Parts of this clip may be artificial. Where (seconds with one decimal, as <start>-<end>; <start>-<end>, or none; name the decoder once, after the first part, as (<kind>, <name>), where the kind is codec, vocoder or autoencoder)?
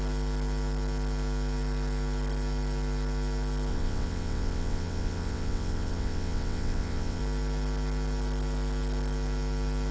3.7-7.2 (vocoder, WaveNeXt)